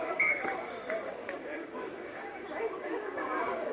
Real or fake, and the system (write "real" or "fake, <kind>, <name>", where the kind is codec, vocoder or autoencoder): fake, codec, DAC